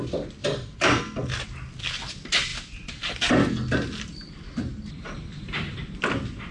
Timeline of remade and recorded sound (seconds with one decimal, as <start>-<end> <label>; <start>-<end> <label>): 0.0-6.5 recorded

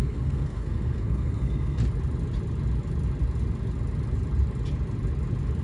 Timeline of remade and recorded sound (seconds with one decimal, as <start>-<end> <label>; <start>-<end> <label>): 0.0-1.8 remade; 1.8-5.6 recorded

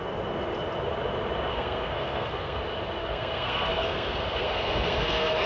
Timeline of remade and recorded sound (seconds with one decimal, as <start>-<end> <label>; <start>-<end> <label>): 0.0-1.5 recorded; 1.5-2.6 remade; 2.6-3.0 recorded; 3.0-5.5 remade

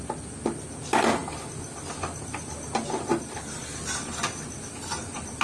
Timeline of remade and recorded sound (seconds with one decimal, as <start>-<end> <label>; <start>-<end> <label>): 0.0-5.4 recorded

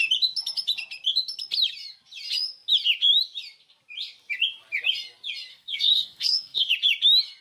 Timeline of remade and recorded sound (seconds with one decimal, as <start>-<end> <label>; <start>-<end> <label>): 0.0-5.5 recorded; 5.5-6.7 remade; 6.7-7.4 recorded

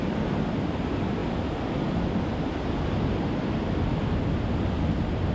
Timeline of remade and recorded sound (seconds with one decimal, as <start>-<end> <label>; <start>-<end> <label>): 0.0-5.3 recorded

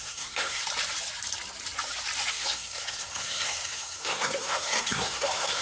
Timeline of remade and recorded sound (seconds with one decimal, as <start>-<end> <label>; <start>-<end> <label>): 0.0-0.6 remade; 0.6-2.3 recorded; 2.3-5.6 remade